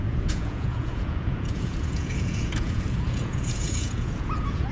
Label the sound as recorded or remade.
remade